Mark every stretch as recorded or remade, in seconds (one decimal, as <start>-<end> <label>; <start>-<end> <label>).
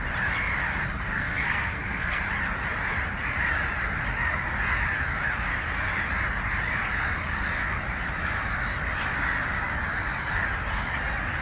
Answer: 0.0-1.1 recorded; 1.1-2.2 remade; 2.2-11.4 recorded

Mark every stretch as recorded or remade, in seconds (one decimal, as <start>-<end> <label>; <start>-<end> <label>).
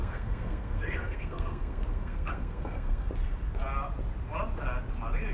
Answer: 0.0-3.1 remade; 3.1-5.3 recorded